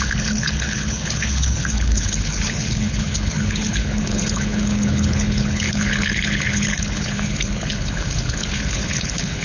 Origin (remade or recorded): remade